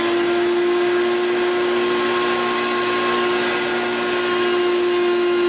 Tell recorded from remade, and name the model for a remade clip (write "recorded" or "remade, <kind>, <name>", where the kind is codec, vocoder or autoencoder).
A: recorded